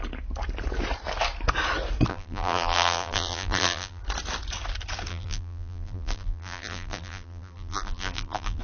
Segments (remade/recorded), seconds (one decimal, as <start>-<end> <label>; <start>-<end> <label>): 0.0-2.1 recorded; 2.1-4.0 remade; 4.0-5.1 recorded; 5.1-8.6 remade